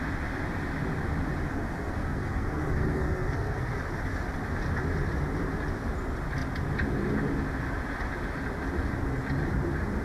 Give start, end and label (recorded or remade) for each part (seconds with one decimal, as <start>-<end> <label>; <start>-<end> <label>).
0.0-1.5 recorded; 1.5-3.7 remade; 3.7-10.0 recorded

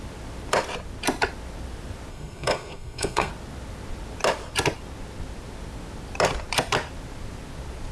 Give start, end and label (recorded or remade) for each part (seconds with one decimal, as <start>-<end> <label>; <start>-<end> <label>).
0.0-2.1 recorded; 2.1-3.3 remade; 3.3-7.9 recorded

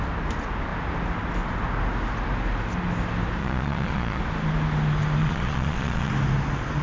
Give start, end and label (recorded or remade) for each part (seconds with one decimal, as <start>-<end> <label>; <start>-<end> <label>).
0.0-3.4 recorded; 3.4-4.2 remade; 4.2-5.2 recorded; 5.2-6.1 remade; 6.1-6.8 recorded

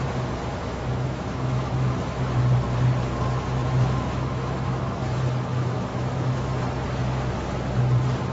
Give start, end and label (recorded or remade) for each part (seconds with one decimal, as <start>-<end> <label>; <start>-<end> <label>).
0.0-0.7 recorded; 0.7-2.2 remade; 2.2-3.6 recorded; 3.6-5.2 remade; 5.2-5.9 recorded; 5.9-6.6 remade; 6.6-8.3 recorded

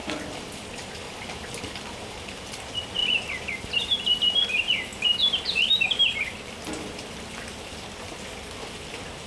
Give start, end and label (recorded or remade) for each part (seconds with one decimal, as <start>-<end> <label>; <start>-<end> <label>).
0.0-9.3 recorded

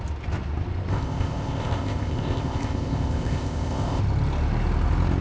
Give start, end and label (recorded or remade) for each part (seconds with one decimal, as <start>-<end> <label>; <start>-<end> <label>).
0.0-0.9 recorded; 0.9-4.0 remade; 4.0-5.2 recorded

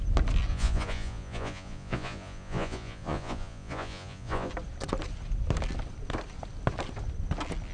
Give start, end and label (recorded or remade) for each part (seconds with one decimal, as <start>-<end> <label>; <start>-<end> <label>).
0.0-0.5 recorded; 0.5-4.5 remade; 4.5-7.7 recorded